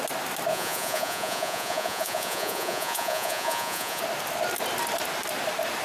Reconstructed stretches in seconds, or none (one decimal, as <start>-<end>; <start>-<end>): 0.5-4.0